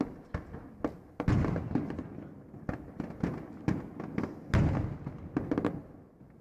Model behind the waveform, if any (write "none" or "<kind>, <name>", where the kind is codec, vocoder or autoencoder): none